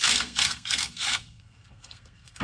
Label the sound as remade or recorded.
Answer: remade